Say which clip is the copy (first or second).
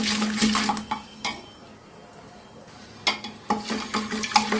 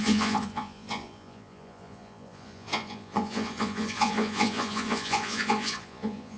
second